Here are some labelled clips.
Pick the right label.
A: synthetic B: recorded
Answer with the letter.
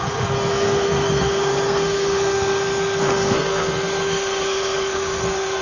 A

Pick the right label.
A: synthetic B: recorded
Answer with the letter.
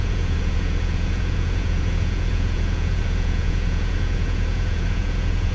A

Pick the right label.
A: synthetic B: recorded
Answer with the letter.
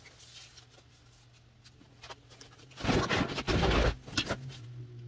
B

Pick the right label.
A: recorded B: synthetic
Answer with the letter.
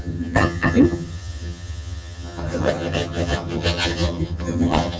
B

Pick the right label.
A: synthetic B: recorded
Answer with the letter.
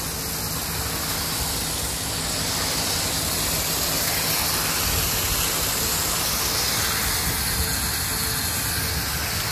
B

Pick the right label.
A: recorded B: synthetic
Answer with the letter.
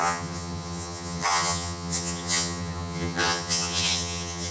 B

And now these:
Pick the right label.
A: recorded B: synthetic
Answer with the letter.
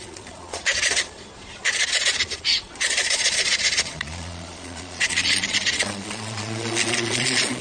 B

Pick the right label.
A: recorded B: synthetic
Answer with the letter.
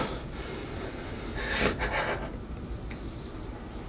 A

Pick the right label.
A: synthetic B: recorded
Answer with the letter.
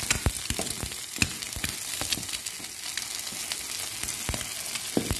B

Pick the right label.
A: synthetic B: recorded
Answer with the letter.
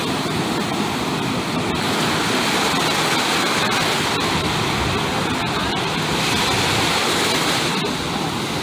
B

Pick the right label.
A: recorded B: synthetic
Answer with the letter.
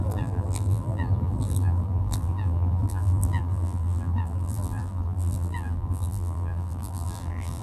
B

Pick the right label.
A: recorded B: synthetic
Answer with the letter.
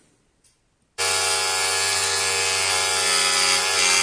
A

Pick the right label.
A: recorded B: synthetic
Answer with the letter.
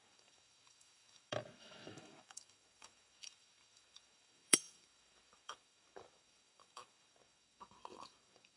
B